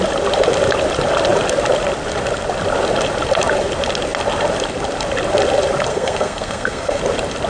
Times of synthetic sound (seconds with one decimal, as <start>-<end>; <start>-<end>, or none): 5.9-7.0